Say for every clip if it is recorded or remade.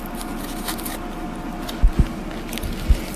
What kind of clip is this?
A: recorded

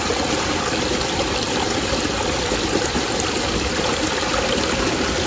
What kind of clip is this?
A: recorded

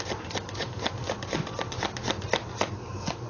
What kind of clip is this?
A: recorded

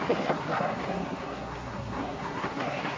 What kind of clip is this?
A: remade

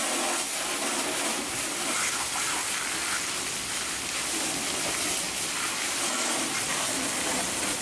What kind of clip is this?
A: recorded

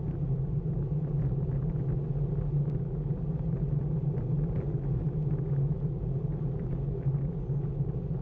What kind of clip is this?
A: recorded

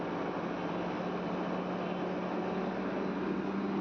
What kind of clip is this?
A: recorded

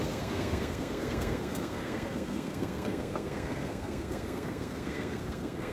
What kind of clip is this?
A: remade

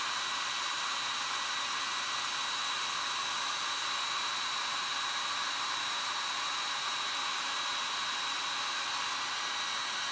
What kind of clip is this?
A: recorded